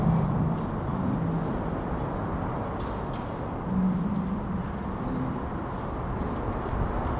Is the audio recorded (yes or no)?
yes